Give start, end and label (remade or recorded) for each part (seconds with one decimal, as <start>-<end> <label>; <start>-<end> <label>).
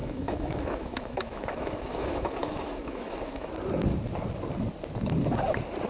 0.0-3.5 remade; 3.5-5.9 recorded